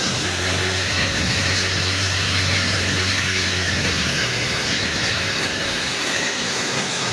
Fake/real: fake